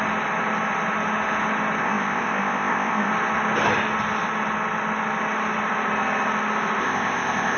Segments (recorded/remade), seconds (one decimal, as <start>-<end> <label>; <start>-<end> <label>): 0.0-1.8 recorded; 1.8-3.1 remade; 3.1-6.8 recorded; 6.8-7.6 remade